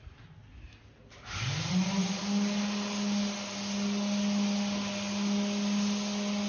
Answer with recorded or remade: recorded